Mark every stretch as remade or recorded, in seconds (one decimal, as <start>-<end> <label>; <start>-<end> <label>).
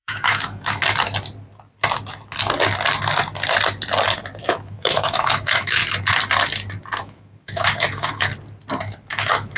0.0-0.8 remade; 0.8-4.4 recorded; 4.4-5.8 remade; 5.8-7.0 recorded; 7.0-8.3 remade; 8.3-9.1 recorded; 9.1-9.6 remade